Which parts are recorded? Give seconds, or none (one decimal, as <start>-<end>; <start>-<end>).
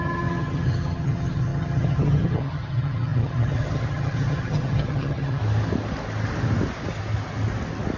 5.4-8.0